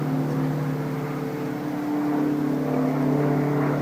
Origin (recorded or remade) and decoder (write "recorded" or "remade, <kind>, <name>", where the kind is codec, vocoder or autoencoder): recorded